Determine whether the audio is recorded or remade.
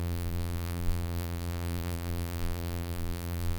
remade